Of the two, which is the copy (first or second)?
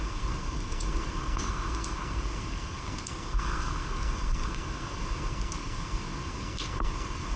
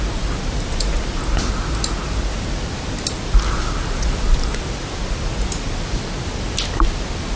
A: first